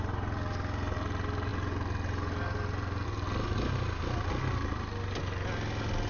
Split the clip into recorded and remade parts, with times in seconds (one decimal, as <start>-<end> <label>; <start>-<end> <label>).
0.0-6.1 recorded